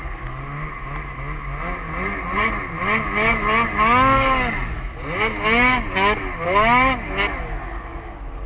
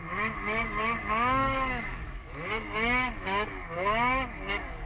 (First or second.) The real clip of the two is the first